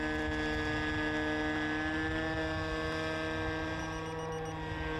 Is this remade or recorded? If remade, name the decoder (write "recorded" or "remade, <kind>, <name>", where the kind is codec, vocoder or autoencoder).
recorded